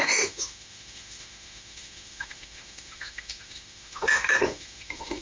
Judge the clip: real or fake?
fake